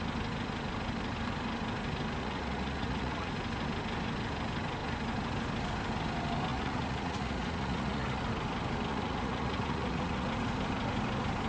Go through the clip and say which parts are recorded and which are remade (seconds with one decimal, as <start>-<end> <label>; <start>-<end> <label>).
0.0-2.2 recorded; 2.2-3.3 remade; 3.3-6.5 recorded; 6.5-8.2 remade; 8.2-8.9 recorded; 8.9-10.3 remade; 10.3-11.5 recorded